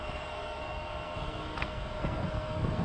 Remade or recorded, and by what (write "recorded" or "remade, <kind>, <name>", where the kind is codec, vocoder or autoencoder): remade, codec, SNAC